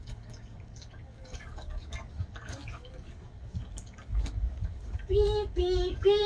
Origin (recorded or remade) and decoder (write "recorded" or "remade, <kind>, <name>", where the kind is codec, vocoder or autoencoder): remade, codec, DAC